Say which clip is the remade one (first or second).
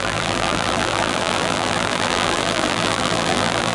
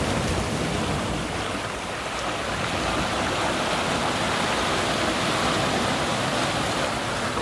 first